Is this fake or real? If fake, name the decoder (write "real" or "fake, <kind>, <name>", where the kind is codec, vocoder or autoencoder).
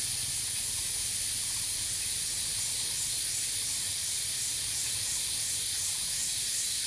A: real